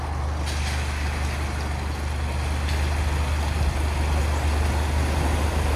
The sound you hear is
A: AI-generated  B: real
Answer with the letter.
B